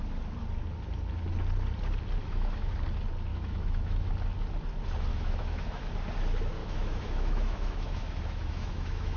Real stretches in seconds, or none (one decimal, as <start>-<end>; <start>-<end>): 0.0-2.2; 2.7-3.3; 4.1-5.1; 5.9-6.6